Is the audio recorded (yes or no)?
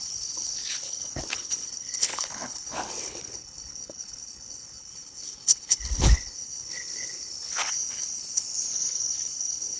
no